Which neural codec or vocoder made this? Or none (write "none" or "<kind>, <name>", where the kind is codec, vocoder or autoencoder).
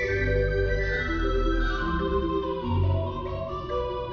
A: none